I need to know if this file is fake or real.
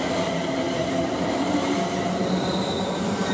fake